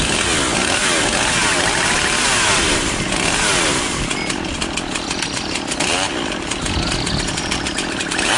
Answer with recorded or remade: recorded